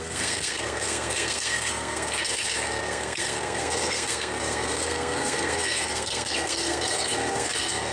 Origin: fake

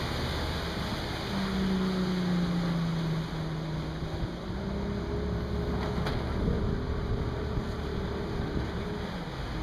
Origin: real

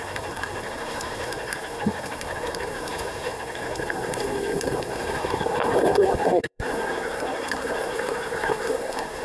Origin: fake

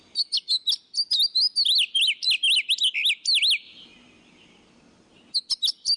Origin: real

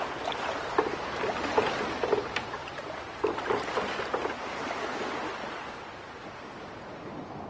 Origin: real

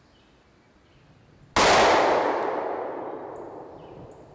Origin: real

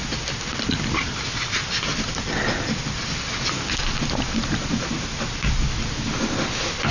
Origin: real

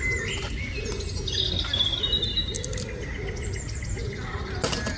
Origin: real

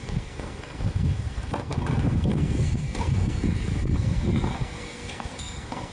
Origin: fake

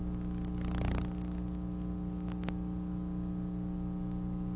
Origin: real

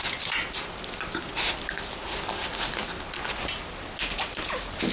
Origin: real